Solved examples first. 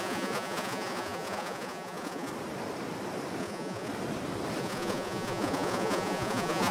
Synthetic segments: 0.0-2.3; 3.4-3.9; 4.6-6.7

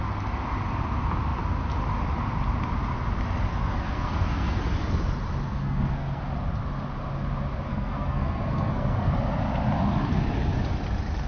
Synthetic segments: 3.5-4.6; 5.5-6.2; 7.7-9.1

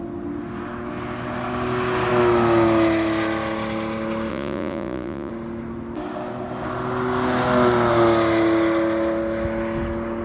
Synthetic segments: 4.3-5.3